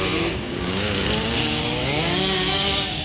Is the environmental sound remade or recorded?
remade